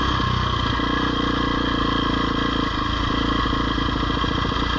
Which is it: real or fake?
real